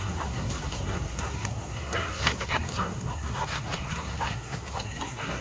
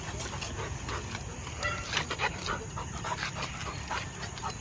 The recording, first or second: second